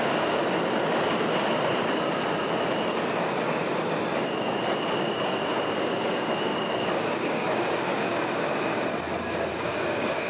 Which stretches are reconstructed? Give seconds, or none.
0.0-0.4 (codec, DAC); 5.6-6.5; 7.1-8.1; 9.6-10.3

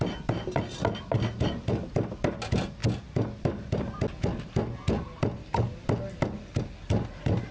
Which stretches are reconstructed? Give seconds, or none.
none

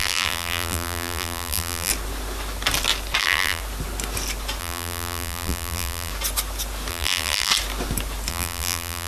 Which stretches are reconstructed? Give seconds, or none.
0.0-1.9 (vocoder, BigVGAN v2); 3.2-3.6; 4.6-6.1; 6.9-7.5; 8.3-9.1